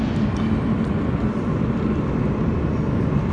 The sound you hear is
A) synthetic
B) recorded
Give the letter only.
B